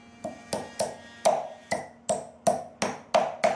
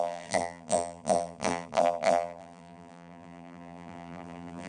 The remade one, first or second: second